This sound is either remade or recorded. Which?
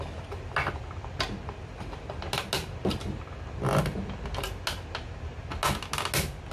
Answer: recorded